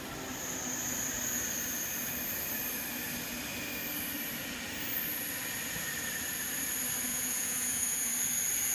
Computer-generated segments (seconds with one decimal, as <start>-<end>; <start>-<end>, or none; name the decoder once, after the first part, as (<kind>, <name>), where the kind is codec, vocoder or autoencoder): 7.1-8.1 (vocoder, Vocos)